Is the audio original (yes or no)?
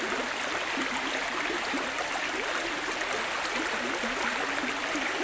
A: yes